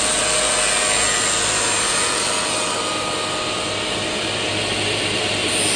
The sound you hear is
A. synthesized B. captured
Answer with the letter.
B